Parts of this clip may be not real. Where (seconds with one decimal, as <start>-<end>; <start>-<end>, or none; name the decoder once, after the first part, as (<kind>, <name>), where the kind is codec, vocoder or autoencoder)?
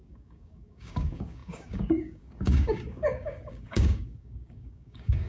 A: 0.0-5.3 (codec, DAC)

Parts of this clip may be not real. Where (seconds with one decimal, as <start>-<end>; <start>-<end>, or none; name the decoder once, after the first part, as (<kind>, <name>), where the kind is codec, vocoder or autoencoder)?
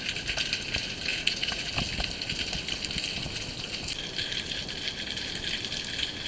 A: 1.1-1.7 (vocoder, Vocos)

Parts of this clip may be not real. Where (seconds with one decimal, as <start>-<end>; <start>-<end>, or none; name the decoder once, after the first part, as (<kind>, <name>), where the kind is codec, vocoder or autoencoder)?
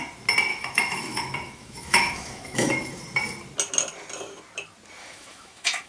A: 0.5-3.0 (autoencoder, DAC-VAE); 5.0-5.9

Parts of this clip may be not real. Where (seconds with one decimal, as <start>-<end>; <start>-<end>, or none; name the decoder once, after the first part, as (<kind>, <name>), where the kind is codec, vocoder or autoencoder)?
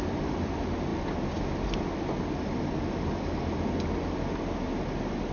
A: none